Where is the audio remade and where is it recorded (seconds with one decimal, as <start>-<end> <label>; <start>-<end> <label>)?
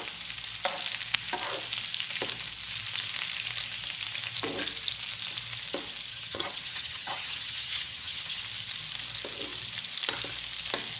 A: 0.0-6.1 recorded; 6.1-8.4 remade; 8.4-11.0 recorded